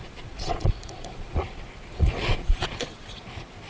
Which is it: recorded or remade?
remade